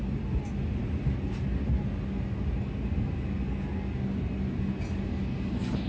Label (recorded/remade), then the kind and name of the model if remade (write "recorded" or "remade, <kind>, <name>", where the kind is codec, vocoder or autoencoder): recorded